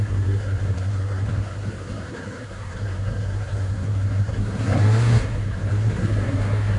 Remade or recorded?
remade